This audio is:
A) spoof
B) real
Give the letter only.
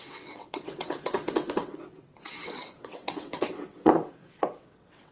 A